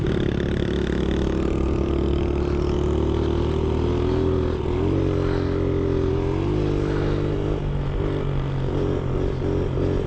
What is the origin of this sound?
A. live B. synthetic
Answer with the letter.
A